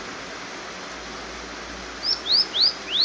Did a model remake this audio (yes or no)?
no